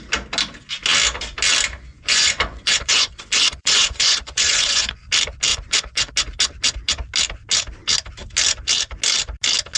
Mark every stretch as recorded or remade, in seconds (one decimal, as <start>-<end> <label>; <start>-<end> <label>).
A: 0.0-1.9 recorded; 1.9-5.0 remade; 5.0-5.5 recorded; 5.5-6.1 remade; 6.1-9.8 recorded